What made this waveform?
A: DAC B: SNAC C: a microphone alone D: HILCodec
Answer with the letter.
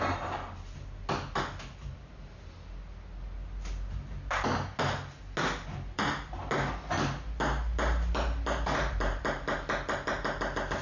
C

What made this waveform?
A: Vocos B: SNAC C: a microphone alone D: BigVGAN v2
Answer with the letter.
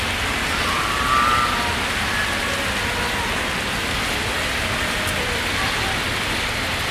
C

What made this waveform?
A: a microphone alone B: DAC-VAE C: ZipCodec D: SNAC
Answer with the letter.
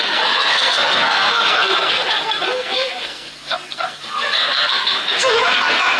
D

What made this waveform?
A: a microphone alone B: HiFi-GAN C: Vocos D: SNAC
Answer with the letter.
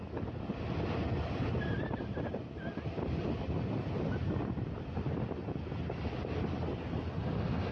A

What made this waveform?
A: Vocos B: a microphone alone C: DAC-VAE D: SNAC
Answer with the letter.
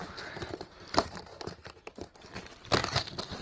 B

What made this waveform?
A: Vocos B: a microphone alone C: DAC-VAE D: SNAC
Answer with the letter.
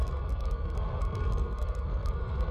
D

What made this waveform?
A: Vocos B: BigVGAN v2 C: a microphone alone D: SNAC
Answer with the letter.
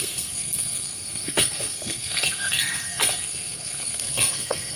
D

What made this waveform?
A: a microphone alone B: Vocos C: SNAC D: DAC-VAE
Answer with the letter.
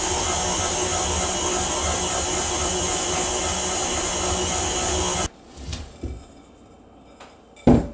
A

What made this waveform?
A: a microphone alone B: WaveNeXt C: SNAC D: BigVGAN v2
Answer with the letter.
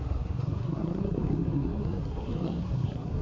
C